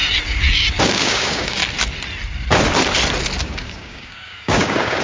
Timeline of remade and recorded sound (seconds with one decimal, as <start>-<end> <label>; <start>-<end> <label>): 0.0-0.8 recorded; 0.8-1.6 remade; 1.6-3.4 recorded; 3.4-5.0 remade